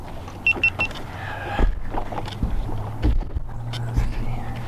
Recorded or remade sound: recorded